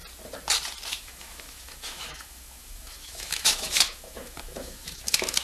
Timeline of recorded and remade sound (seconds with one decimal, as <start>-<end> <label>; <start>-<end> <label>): 0.0-0.9 recorded; 0.9-5.4 remade